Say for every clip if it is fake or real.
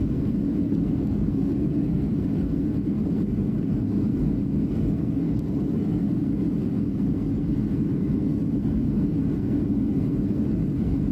fake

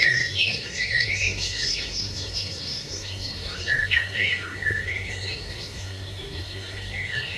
fake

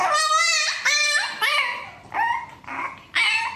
real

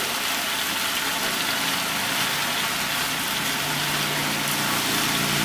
real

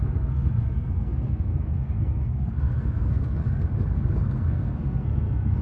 fake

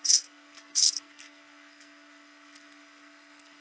fake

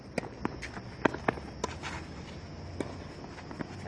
real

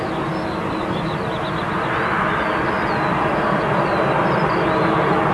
real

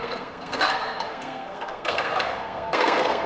fake